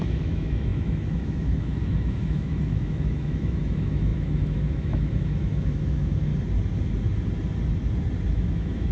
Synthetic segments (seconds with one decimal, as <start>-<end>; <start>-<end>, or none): 0.0-6.3; 8.3-8.9